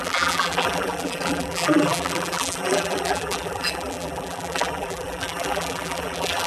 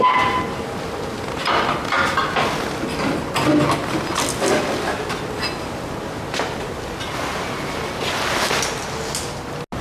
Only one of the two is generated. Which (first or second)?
first